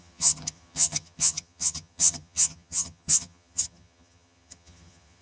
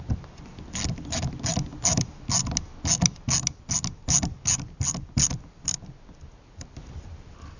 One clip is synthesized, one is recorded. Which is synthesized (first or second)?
first